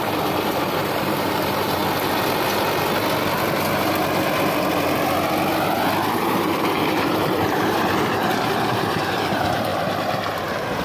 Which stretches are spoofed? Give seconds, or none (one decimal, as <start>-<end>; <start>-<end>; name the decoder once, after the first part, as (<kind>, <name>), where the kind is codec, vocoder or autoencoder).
0.0-1.8 (vocoder, BigVGAN v2); 6.2-9.7